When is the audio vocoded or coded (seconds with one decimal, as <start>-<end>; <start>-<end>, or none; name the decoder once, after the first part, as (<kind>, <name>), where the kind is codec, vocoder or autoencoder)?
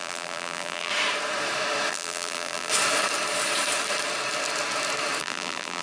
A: 0.0-0.9 (vocoder, BigVGAN v2); 1.9-2.7; 5.2-5.8